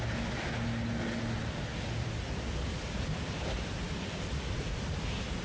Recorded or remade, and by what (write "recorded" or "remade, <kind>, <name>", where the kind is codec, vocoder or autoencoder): recorded